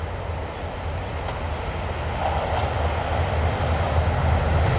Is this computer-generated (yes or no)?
no